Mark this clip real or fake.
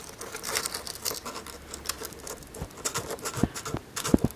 real